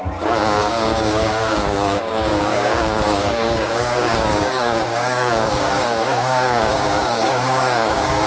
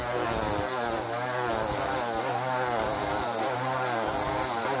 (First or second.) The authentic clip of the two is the second